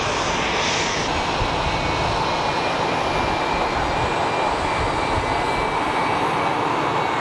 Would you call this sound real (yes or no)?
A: yes